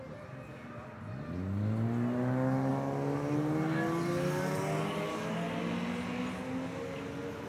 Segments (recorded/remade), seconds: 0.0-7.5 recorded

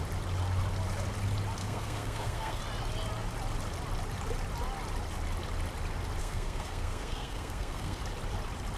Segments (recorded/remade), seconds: 0.0-1.6 recorded; 1.6-2.6 remade; 2.6-6.2 recorded; 6.2-8.0 remade; 8.0-8.8 recorded

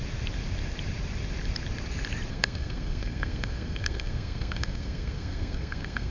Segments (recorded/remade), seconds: 0.0-2.3 recorded; 2.3-6.1 remade

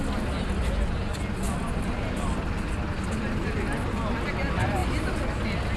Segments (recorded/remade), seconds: 0.0-5.8 recorded

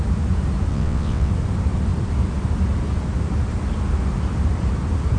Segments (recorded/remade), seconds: 0.0-0.7 recorded; 0.7-1.3 remade; 1.3-5.2 recorded

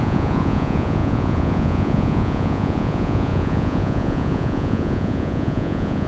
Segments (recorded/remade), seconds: 0.0-6.1 remade

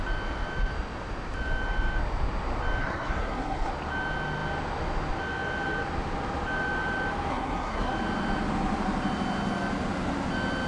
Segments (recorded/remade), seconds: 0.0-2.8 recorded; 2.8-3.7 remade; 3.7-7.3 recorded; 7.3-7.9 remade; 7.9-10.7 recorded